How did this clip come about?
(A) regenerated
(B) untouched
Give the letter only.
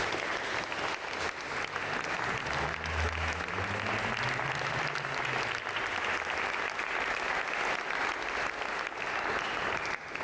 B